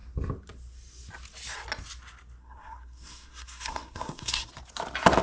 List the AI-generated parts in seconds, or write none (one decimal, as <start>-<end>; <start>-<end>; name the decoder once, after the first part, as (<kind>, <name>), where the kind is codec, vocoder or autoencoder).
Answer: 2.4-4.5 (codec, SNAC)